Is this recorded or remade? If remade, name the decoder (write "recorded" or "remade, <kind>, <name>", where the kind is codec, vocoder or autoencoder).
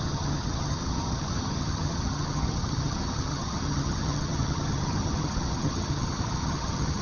remade, vocoder, HiFi-GAN